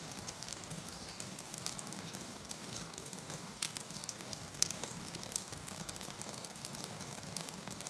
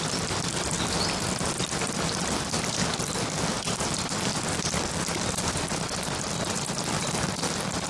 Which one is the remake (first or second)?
first